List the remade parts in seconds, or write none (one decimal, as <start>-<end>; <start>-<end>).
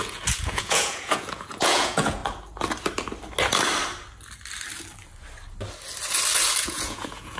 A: 0.0-2.2; 6.6-7.4